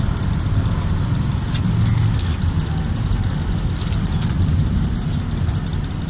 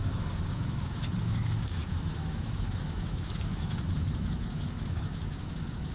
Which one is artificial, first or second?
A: second